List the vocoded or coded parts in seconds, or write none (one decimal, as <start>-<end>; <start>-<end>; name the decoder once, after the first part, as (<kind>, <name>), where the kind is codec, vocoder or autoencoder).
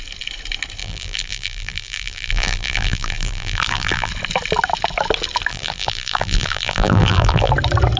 0.8-4.1 (vocoder, BigVGAN v2); 5.5-7.5